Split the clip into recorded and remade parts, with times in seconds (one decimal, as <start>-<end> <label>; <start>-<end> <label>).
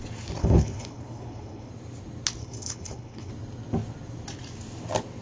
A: 0.0-0.4 recorded; 0.4-1.7 remade; 1.7-2.4 recorded; 2.4-3.3 remade; 3.3-5.2 recorded